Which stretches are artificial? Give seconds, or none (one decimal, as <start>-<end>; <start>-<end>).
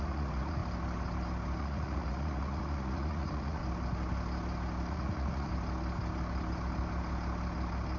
0.0-0.6; 1.6-3.6; 4.9-5.5